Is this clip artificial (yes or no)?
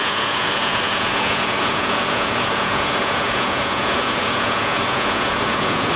yes